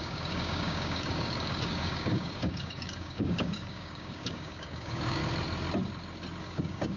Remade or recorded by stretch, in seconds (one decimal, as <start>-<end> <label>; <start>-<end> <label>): 0.0-5.2 remade; 5.2-6.4 recorded; 6.4-7.0 remade